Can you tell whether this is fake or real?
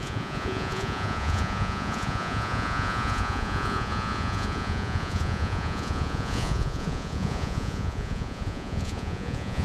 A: fake